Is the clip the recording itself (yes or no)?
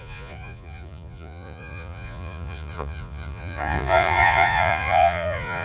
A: no